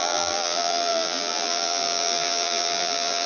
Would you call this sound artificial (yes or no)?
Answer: yes